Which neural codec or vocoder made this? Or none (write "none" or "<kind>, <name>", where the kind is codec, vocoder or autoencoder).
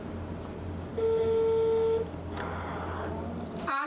none